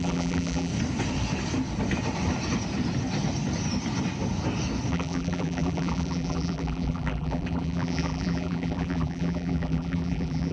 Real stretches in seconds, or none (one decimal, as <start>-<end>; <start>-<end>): 0.7-4.9